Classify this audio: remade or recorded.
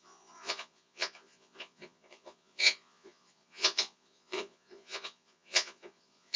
remade